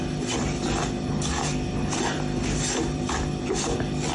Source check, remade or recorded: recorded